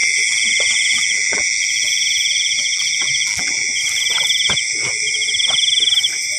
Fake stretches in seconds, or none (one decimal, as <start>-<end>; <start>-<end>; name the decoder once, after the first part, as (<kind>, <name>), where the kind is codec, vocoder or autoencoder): 0.0-3.8 (vocoder, BigVGAN v2)